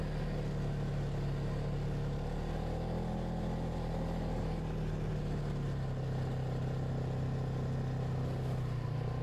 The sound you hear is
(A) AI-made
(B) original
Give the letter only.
B